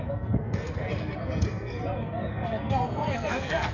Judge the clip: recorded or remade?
remade